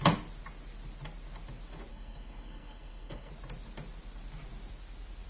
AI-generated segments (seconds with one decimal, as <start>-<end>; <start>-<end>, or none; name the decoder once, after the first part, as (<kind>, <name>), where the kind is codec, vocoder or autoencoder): 1.9-3.3 (codec, SNAC)